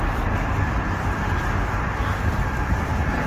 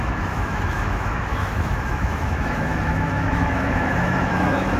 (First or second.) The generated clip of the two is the second